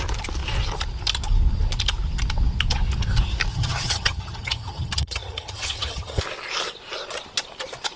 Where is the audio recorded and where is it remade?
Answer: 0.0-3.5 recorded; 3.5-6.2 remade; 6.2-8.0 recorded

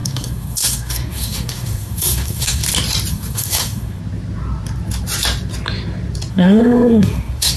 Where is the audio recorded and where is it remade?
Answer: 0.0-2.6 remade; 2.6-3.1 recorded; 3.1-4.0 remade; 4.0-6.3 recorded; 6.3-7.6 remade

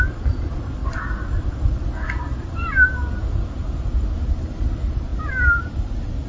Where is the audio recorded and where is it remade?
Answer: 0.0-6.3 recorded

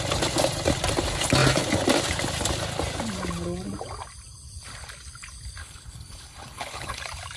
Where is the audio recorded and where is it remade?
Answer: 0.0-5.6 recorded; 5.6-7.0 remade; 7.0-7.4 recorded

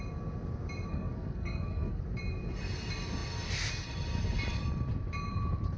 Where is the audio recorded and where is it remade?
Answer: 0.0-0.9 recorded; 0.9-2.0 remade; 2.0-5.8 recorded

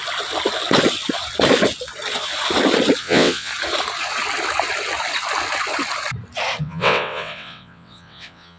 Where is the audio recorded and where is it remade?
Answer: 0.0-3.0 recorded; 3.0-3.5 remade; 3.5-6.6 recorded; 6.6-8.6 remade